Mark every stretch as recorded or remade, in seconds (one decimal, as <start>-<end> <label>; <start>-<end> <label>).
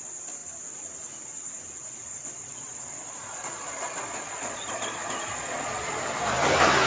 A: 0.0-1.8 recorded; 1.8-5.9 remade; 5.9-6.9 recorded